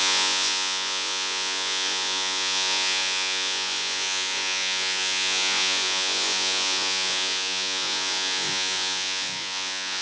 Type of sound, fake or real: fake